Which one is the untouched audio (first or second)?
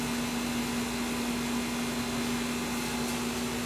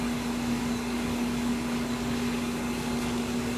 first